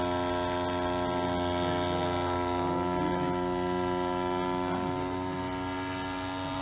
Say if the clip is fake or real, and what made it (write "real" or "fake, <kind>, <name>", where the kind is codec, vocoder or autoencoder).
real